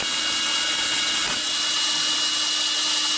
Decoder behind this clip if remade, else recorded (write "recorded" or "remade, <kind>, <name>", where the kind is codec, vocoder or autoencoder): recorded